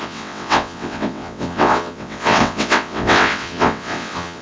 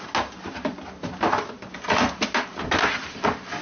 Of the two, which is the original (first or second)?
second